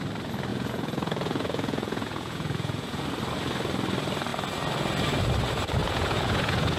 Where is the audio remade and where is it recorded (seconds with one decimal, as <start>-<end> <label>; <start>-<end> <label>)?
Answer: 0.0-0.5 recorded; 0.5-3.0 remade; 3.0-5.8 recorded; 5.8-6.8 remade

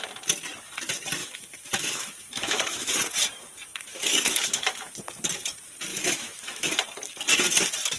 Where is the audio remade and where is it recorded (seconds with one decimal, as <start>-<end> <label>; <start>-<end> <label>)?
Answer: 0.0-1.2 recorded; 1.2-2.9 remade; 2.9-3.7 recorded; 3.7-4.9 remade; 4.9-5.9 recorded; 5.9-6.7 remade; 6.7-8.0 recorded

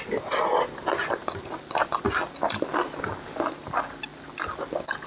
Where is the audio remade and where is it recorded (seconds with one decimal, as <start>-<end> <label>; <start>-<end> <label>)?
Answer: 0.0-5.1 recorded

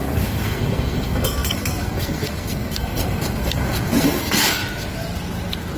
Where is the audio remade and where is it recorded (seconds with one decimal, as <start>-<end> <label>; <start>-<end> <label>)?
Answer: 0.0-4.6 remade; 4.6-5.8 recorded